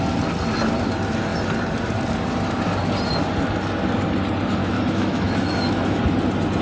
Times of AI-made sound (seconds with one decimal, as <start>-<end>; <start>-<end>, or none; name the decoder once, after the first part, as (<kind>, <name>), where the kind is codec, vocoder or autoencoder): 4.6-6.0 (autoencoder, DAC-VAE)